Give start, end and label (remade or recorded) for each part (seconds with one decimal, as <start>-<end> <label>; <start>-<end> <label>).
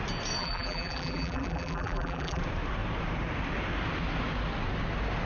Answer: 0.0-0.4 recorded; 0.4-2.4 remade; 2.4-5.3 recorded